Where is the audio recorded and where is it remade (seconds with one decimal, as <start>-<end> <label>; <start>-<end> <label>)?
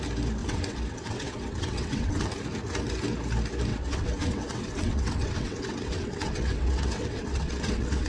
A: 0.0-0.4 recorded; 0.4-2.3 remade; 2.3-3.7 recorded; 3.7-8.1 remade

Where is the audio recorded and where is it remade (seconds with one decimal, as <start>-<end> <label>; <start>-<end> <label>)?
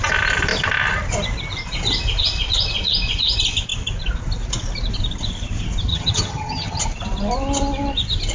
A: 0.0-5.9 recorded; 5.9-6.8 remade; 6.8-8.3 recorded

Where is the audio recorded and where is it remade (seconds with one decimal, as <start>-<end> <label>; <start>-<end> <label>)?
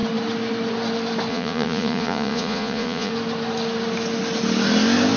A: 0.0-1.3 recorded; 1.3-3.1 remade; 3.1-5.2 recorded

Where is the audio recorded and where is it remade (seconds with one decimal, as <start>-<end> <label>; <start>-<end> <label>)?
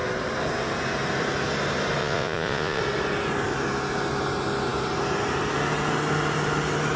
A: 0.0-2.0 recorded; 2.0-2.8 remade; 2.8-7.0 recorded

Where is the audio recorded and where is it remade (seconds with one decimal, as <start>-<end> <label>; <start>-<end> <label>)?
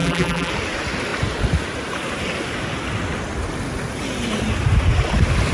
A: 0.0-0.5 remade; 0.5-5.5 recorded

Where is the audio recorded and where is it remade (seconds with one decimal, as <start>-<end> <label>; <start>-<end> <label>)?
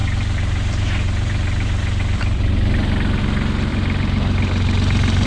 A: 0.0-3.2 remade; 3.2-3.7 recorded; 3.7-5.3 remade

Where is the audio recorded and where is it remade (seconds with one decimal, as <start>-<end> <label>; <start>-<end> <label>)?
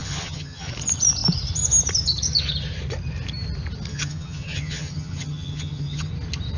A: 0.0-0.7 remade; 0.7-3.9 recorded; 3.9-6.1 remade; 6.1-6.6 recorded